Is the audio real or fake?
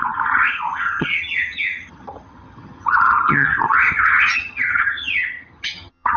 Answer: fake